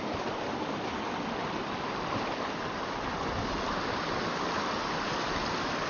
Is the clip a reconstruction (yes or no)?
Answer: no